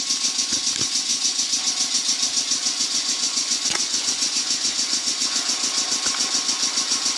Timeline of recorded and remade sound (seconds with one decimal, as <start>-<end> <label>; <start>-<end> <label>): 0.0-1.1 recorded; 1.1-1.7 remade; 1.7-2.6 recorded; 2.6-5.4 remade; 5.4-7.2 recorded